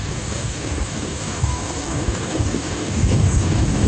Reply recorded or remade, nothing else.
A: remade